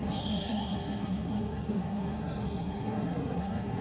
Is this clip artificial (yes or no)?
yes